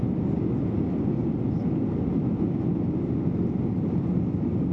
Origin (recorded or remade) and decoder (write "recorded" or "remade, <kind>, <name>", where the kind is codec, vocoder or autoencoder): recorded